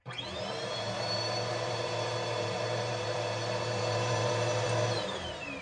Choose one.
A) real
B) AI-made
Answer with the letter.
B